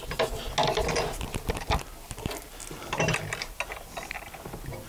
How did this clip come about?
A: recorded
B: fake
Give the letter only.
A